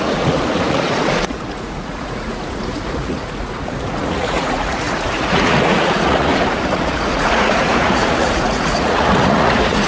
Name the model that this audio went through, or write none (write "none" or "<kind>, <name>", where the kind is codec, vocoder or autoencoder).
vocoder, Vocos